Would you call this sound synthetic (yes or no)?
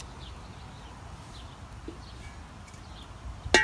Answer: no